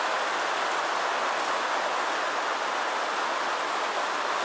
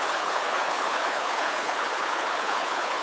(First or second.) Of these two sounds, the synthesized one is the second